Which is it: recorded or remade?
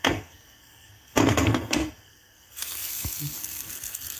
remade